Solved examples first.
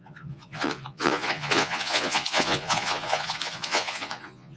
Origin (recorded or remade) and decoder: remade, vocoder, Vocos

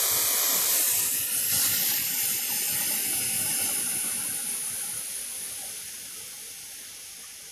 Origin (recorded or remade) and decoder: recorded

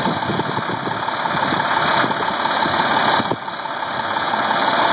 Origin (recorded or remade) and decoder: recorded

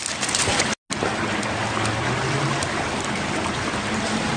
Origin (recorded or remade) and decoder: recorded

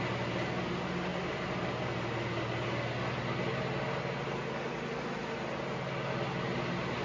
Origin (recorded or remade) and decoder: recorded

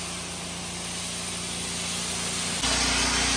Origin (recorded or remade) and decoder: recorded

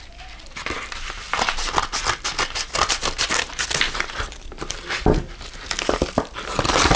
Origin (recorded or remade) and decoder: recorded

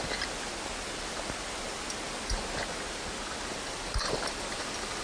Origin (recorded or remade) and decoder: recorded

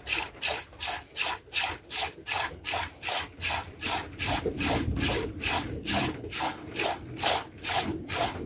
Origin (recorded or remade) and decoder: remade, vocoder, BigVGAN v2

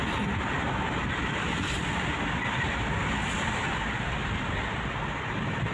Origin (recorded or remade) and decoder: recorded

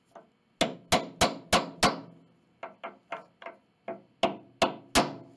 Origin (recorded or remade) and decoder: recorded